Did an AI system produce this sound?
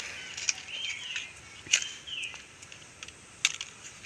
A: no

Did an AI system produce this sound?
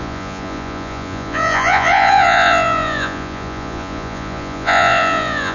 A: yes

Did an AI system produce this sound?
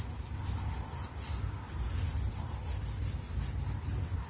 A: no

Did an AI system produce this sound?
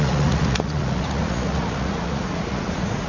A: yes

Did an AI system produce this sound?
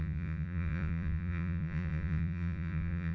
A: yes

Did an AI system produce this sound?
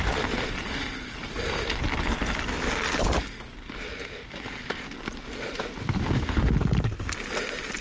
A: no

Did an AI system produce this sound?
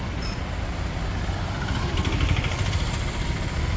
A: no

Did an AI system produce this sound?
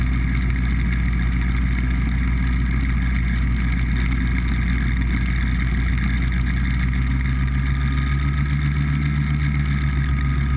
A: no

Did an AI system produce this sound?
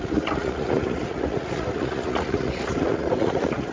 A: yes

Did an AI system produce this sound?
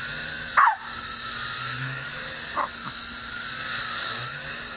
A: no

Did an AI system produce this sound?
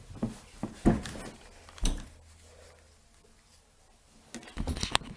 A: no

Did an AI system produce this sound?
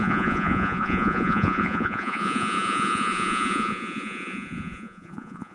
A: yes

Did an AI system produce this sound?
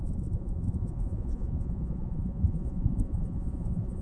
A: yes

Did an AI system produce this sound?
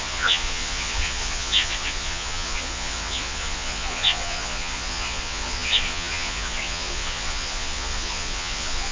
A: yes